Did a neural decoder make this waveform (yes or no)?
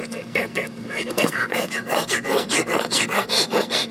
yes